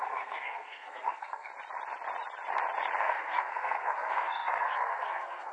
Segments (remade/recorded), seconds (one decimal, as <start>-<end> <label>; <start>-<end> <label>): 0.0-1.5 remade; 1.5-3.0 recorded; 3.0-5.5 remade